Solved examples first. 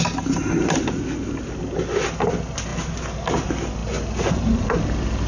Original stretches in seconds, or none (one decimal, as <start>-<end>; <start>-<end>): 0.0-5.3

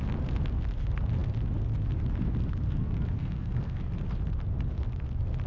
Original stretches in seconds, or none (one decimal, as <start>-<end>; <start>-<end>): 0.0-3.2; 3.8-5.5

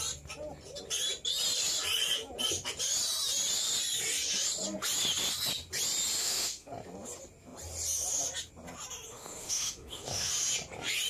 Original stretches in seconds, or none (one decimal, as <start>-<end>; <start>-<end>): 0.0-6.2; 6.7-9.1; 10.3-11.1

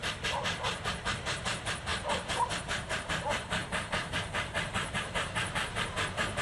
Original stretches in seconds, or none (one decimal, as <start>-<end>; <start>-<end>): 1.9-2.6